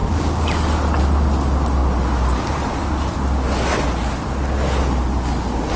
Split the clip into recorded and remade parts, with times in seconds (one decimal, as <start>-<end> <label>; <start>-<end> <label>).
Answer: 0.0-5.8 recorded